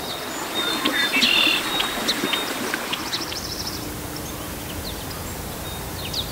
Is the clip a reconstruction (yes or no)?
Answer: no